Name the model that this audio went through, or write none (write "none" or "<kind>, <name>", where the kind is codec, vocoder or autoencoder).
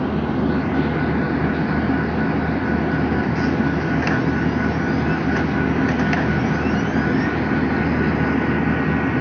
none